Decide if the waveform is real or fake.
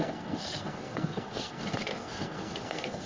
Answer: fake